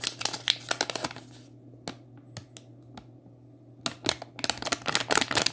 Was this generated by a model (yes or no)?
no